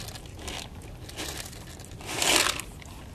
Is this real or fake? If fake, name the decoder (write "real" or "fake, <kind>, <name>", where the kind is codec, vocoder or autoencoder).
real